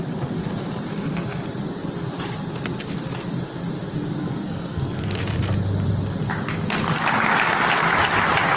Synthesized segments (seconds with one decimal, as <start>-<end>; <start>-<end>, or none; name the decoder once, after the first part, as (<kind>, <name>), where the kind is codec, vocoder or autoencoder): 4.2-5.2 (codec, SNAC)